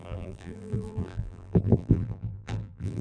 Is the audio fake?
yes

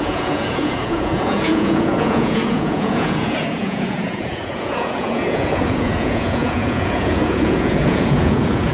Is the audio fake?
yes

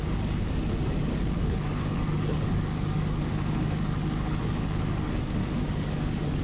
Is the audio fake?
yes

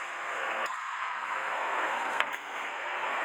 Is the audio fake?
yes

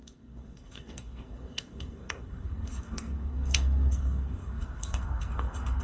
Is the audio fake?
yes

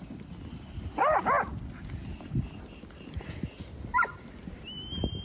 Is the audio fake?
no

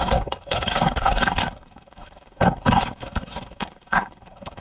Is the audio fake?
yes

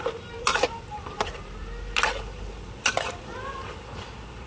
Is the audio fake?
no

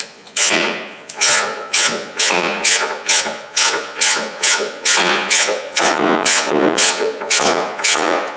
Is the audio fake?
yes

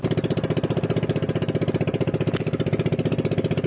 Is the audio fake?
no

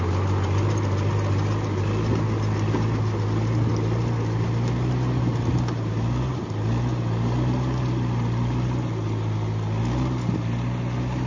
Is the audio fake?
no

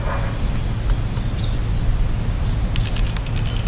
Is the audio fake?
no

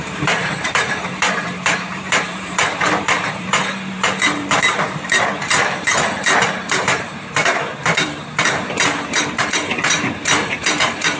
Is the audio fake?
yes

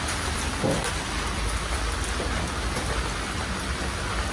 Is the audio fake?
no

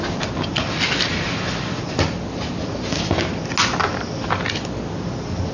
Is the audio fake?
no